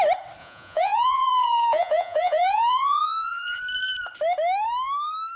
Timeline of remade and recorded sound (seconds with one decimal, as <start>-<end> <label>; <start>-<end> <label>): 0.0-0.4 recorded; 0.4-3.6 remade; 3.6-5.4 recorded